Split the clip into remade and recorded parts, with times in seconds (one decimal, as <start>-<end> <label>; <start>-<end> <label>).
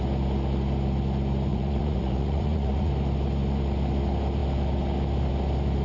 0.0-1.5 recorded; 1.5-2.9 remade; 2.9-5.8 recorded